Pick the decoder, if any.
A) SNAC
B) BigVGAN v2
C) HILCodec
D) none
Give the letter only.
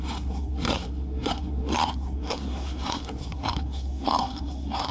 A